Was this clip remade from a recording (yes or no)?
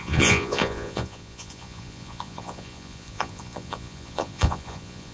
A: yes